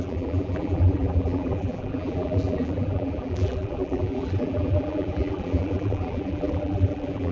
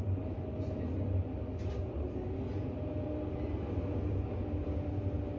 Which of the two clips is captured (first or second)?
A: second